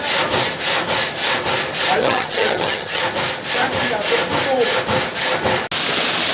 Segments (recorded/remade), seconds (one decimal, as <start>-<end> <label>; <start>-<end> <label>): 0.0-2.0 recorded; 2.0-3.0 remade; 3.0-6.3 recorded